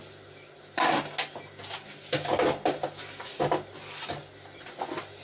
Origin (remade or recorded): recorded